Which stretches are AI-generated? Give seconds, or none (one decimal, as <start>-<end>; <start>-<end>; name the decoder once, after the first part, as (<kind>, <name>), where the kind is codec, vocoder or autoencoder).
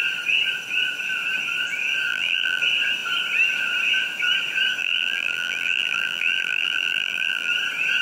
2.1-2.6 (vocoder, BigVGAN v2); 4.8-7.5